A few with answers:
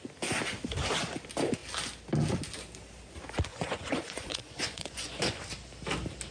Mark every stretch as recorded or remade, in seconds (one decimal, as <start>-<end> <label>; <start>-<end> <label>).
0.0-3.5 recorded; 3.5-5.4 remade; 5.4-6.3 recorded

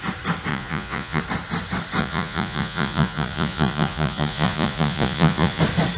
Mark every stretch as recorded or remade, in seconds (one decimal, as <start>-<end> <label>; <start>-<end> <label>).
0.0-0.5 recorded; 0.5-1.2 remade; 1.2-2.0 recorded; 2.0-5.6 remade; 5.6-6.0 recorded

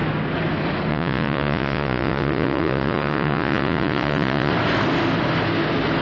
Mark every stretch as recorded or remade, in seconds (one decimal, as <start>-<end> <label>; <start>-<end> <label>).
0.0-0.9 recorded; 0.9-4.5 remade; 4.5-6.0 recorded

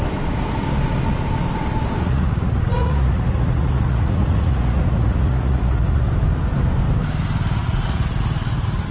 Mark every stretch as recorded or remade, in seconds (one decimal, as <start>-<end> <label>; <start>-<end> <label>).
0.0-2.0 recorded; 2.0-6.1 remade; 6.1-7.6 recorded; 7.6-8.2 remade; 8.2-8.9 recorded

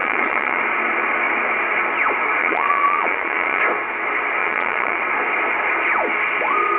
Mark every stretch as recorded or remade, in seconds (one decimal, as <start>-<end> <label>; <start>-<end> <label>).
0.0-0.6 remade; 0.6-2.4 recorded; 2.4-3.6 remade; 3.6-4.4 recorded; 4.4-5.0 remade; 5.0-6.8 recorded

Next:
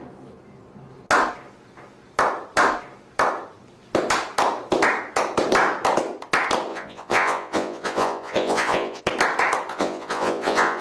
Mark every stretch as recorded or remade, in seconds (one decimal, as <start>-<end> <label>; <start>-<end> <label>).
0.0-6.7 recorded; 6.7-9.0 remade; 9.0-9.7 recorded; 9.7-10.8 remade

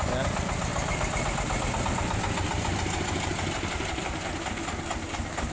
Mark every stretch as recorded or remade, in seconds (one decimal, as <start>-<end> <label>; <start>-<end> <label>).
0.0-5.5 recorded

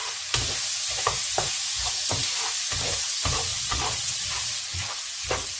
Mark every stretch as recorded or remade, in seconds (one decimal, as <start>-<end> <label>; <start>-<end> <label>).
0.0-3.5 recorded; 3.5-4.9 remade; 4.9-5.6 recorded